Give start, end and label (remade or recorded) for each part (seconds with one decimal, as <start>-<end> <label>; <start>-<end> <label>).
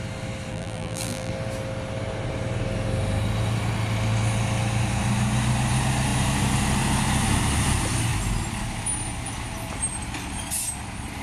0.0-0.5 recorded; 0.5-1.3 remade; 1.3-11.2 recorded